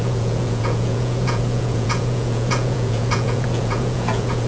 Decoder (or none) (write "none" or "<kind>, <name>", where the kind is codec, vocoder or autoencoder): vocoder, Vocos